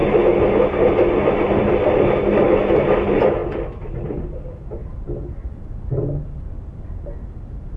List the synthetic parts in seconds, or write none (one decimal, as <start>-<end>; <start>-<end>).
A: none